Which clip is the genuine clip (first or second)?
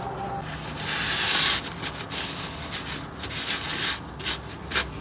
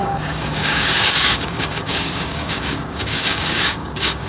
first